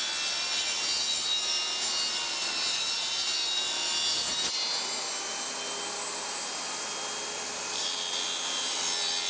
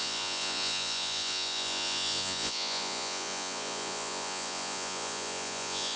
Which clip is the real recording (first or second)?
first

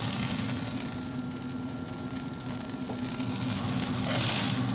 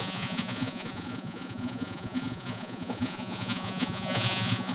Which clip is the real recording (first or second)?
first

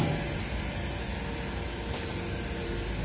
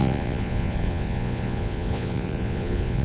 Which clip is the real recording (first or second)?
first